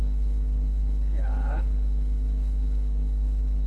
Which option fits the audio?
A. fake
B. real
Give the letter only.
A